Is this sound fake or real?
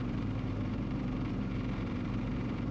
fake